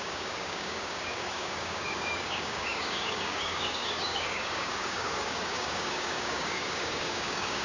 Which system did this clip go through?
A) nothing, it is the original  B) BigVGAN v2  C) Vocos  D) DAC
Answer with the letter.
D